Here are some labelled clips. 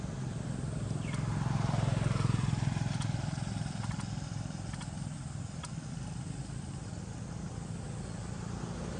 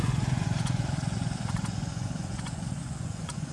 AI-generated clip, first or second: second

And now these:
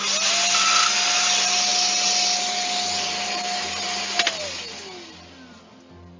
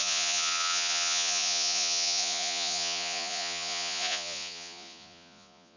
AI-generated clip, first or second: second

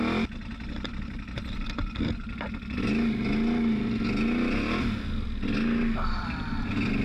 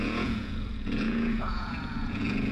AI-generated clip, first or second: second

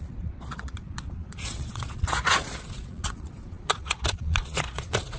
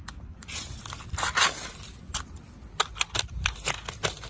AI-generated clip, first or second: first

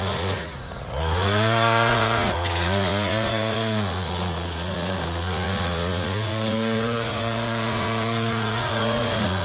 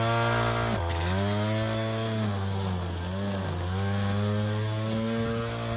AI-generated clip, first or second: first